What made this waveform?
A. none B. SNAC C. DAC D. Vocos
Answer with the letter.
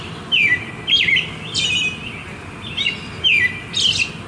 A